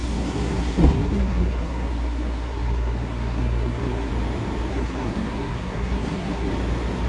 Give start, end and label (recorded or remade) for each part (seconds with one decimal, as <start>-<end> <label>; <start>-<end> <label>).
0.0-4.1 remade; 4.1-4.7 recorded; 4.7-6.5 remade; 6.5-7.1 recorded